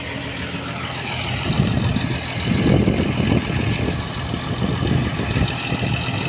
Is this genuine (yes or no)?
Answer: yes